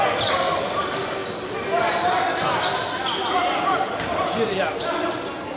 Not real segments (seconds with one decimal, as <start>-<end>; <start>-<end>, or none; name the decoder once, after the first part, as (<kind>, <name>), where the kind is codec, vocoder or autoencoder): none